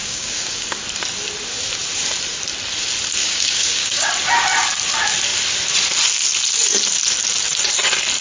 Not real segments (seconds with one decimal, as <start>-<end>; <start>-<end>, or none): 0.0-0.8; 3.2-4.1